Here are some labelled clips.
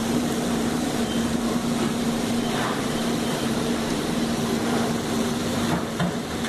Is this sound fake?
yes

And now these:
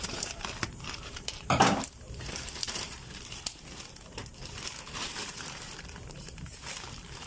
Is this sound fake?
yes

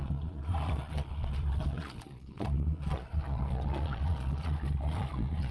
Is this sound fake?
yes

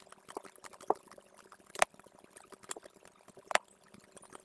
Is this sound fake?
no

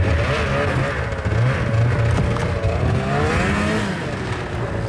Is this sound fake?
no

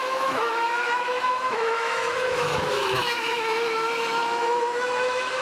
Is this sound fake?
yes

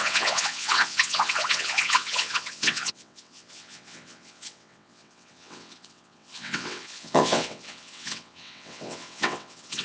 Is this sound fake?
yes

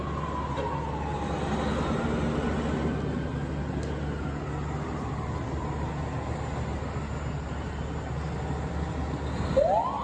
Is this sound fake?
no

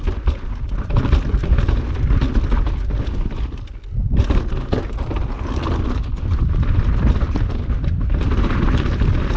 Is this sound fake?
no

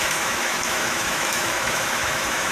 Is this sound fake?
yes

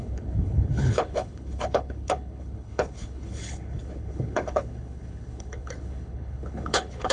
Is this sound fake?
yes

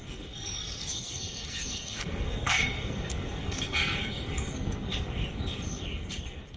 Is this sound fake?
yes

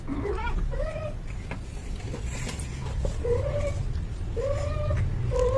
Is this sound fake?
no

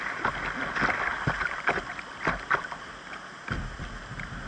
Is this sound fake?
no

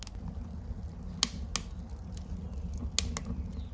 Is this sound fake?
no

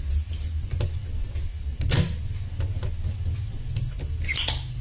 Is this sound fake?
no